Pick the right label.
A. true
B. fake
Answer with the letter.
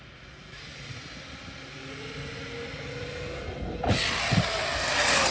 A